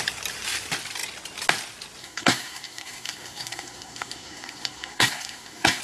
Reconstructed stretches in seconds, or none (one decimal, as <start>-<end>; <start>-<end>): 2.0-5.8